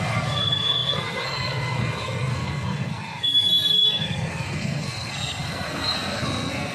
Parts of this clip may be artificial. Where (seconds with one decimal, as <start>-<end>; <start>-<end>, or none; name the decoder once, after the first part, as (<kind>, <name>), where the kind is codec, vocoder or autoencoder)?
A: 0.0-6.7 (codec, SNAC)